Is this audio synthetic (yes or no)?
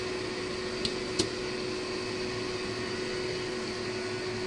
no